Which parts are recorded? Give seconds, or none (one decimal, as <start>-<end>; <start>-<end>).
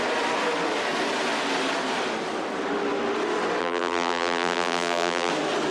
0.0-3.6; 5.3-5.7